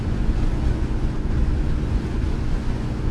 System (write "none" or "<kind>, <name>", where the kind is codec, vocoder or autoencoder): vocoder, Vocos